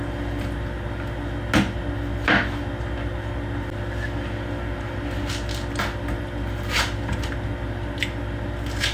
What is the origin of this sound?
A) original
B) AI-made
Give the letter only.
A